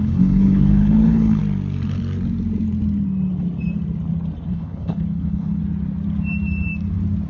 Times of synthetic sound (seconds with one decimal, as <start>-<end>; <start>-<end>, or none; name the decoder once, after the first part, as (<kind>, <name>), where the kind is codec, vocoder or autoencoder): 0.0-1.4 (codec, HILCodec); 4.5-5.6